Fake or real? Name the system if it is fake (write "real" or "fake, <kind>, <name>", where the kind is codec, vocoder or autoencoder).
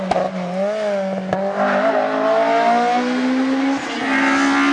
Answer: real